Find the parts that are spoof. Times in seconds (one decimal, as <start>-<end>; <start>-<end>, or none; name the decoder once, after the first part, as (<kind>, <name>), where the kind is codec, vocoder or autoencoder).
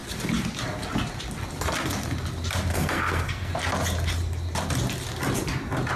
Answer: 2.7-3.5 (codec, SNAC)